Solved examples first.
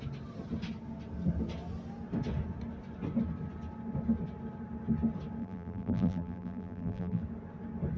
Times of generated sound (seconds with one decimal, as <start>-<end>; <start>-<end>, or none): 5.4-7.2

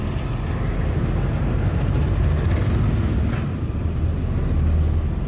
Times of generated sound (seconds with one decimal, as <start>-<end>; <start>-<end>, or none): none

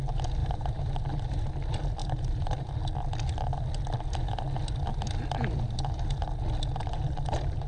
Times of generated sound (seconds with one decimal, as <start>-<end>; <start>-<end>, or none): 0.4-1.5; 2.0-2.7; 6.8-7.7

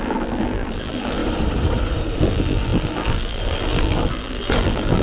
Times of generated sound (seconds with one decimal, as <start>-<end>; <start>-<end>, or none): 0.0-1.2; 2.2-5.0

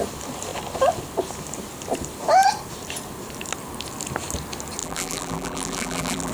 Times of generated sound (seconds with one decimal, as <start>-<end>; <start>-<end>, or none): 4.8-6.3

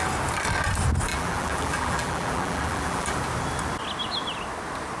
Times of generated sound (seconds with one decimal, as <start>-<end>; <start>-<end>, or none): 1.1-3.2

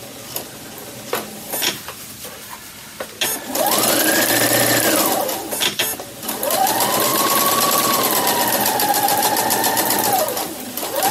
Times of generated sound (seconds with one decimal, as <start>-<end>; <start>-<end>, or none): none

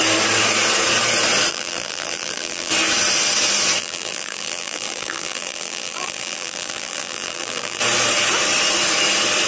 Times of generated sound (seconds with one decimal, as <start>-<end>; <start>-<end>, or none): 1.5-2.7; 3.8-7.8